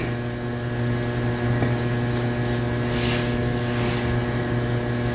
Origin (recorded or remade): recorded